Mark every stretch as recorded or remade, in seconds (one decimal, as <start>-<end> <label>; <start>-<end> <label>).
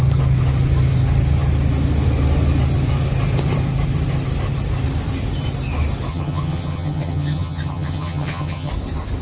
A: 0.0-6.1 recorded; 6.1-8.7 remade; 8.7-9.2 recorded